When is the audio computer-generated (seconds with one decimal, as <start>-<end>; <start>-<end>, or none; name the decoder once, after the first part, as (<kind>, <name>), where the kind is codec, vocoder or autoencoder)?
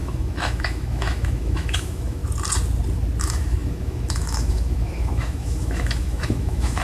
0.0-2.2 (autoencoder, DAC-VAE); 3.2-6.8